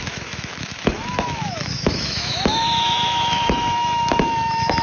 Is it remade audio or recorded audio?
remade